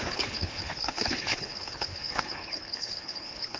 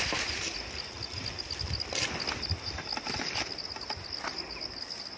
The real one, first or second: second